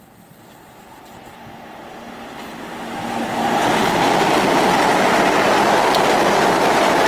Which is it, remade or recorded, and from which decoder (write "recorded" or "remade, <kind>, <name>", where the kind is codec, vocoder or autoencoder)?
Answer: recorded